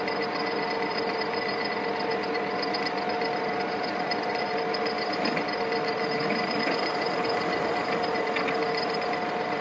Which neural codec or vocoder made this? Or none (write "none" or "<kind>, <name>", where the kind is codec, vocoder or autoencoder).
none